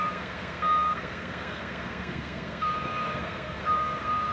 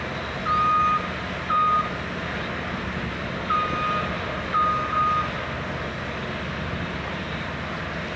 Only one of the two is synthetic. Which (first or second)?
first